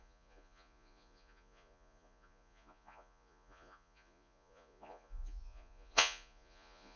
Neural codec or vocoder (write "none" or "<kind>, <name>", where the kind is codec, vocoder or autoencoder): vocoder, Vocos